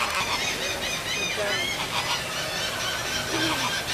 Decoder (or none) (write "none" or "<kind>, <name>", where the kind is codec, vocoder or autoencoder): none